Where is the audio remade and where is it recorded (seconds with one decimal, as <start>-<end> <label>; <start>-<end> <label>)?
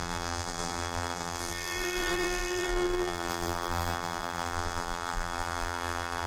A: 0.0-6.3 remade